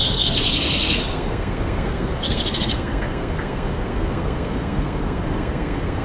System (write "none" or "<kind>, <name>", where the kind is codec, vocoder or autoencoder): codec, SNAC